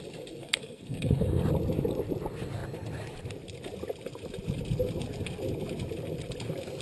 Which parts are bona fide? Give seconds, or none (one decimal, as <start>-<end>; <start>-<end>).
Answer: 0.0-0.4; 1.4-6.8